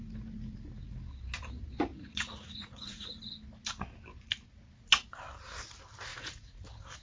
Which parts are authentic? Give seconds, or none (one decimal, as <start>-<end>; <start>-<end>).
0.0-1.9; 3.2-6.1; 6.6-7.0